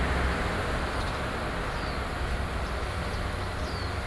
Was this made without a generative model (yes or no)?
yes